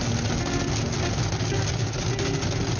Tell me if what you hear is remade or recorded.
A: recorded